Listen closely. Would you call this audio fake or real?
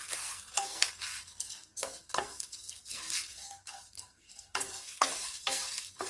fake